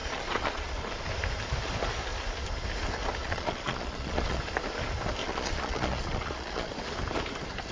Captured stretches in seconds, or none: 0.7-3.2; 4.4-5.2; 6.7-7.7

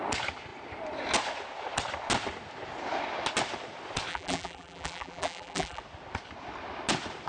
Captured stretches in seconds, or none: 0.0-4.1; 5.8-7.3

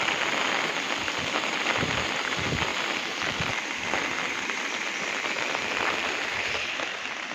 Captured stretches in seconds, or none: 0.0-7.3

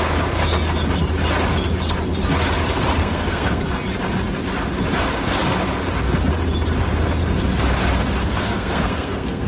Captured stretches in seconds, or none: 0.0-3.0; 3.6-8.2

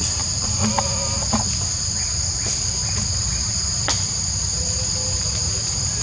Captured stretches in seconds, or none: 0.0-6.0